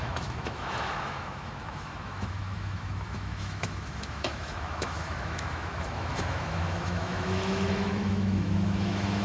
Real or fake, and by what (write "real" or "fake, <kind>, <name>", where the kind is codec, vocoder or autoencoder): fake, autoencoder, DAC-VAE